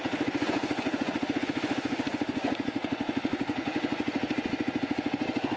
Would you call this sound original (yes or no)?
no